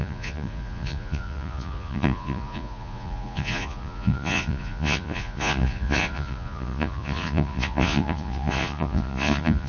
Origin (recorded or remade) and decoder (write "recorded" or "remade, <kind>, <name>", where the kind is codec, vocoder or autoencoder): remade, vocoder, Vocos